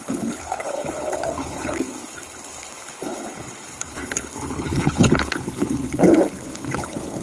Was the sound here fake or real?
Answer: fake